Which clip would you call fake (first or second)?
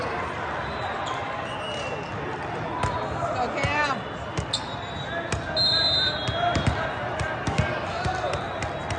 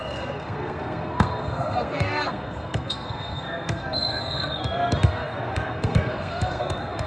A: second